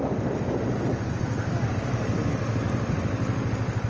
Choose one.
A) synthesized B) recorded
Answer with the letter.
B